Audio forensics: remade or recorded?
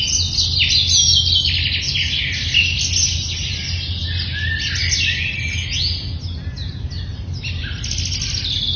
recorded